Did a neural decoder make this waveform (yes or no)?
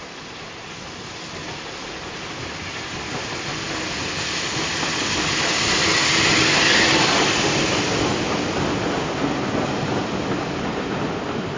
no